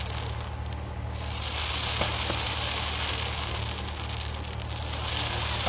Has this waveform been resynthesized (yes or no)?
no